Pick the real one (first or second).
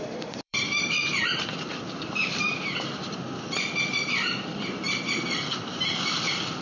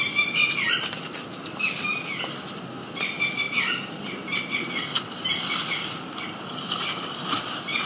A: second